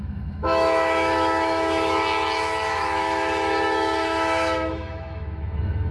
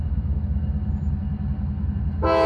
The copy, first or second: first